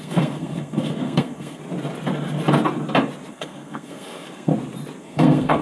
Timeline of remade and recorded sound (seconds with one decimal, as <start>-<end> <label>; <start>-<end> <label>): 0.0-1.6 remade; 1.6-3.3 recorded; 3.3-4.5 remade; 4.5-5.0 recorded; 5.0-5.6 remade